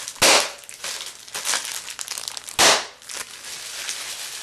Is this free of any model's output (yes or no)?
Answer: yes